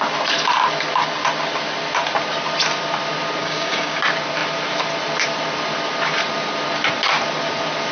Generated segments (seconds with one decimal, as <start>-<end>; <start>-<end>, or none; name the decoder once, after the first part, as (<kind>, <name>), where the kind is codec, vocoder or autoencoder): 3.4-4.0 (codec, DAC)